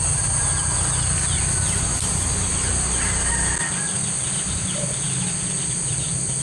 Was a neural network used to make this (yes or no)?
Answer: no